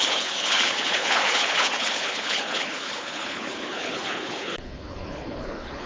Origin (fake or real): fake